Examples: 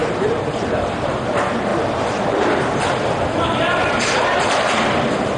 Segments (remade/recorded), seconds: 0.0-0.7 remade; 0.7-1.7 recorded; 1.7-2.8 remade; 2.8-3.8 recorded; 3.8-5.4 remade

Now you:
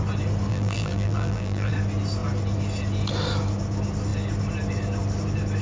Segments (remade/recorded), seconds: 0.0-0.5 recorded; 0.5-1.7 remade; 1.7-5.6 recorded

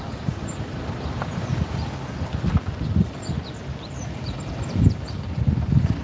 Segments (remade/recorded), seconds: 0.0-6.0 recorded

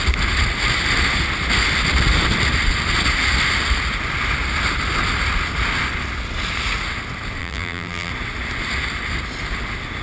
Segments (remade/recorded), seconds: 0.0-7.4 recorded; 7.4-8.1 remade; 8.1-10.0 recorded

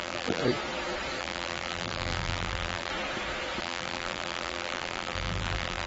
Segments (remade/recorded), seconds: 0.0-0.4 remade; 0.4-1.2 recorded; 1.2-2.9 remade; 2.9-3.6 recorded; 3.6-5.9 remade